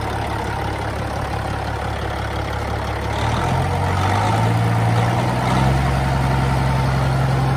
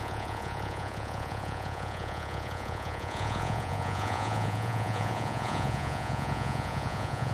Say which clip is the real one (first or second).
first